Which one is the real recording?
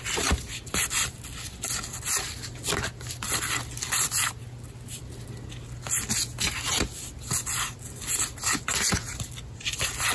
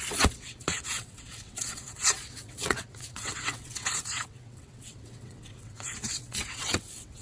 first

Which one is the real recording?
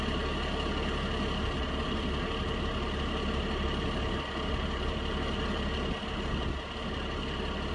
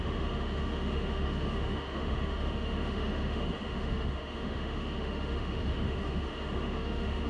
first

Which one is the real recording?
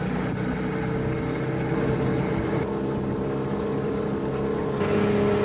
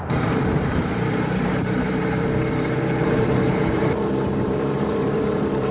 first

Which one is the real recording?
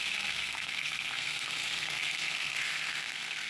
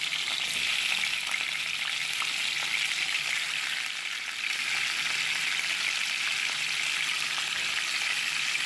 second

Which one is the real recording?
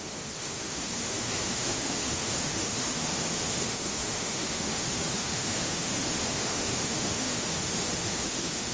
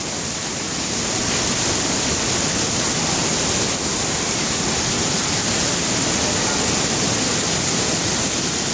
second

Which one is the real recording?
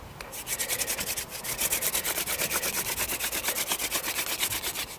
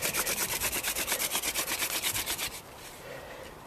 first